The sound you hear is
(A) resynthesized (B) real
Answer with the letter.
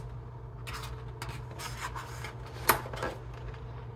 B